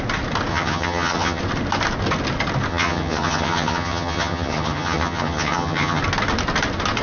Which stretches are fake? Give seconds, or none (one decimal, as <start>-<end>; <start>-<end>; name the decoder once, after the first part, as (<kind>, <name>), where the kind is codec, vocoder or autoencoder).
0.5-1.4 (vocoder, HiFi-GAN); 2.7-6.0